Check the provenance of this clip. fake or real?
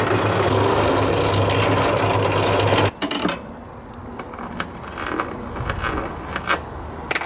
real